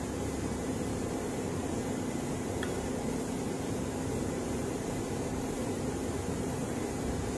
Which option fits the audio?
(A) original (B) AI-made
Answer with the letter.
B